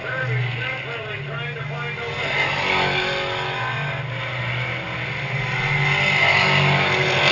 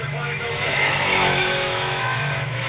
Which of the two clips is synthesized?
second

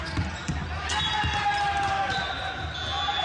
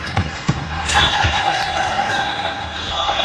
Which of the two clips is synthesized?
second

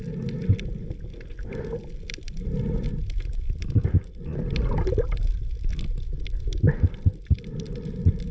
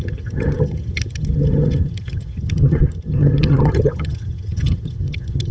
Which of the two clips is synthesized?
second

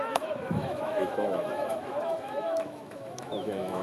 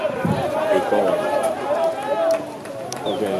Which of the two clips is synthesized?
first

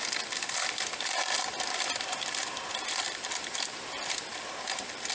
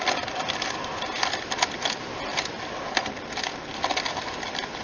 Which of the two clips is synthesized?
first